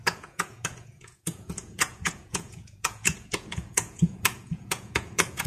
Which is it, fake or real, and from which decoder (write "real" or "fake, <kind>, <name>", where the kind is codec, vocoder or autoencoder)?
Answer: fake, vocoder, Vocos